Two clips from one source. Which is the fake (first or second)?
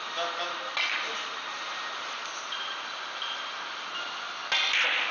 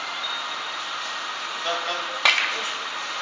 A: second